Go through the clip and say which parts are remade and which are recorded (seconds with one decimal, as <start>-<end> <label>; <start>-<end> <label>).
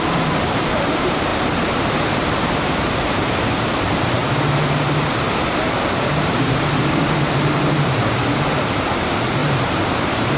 0.0-8.2 remade; 8.2-8.9 recorded; 8.9-10.4 remade